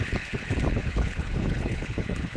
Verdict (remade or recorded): remade